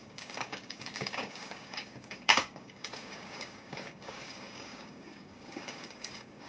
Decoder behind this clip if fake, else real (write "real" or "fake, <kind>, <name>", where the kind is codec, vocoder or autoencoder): fake, codec, DAC